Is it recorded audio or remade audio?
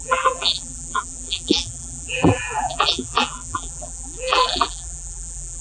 remade